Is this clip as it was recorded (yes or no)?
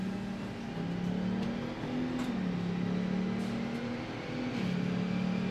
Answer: yes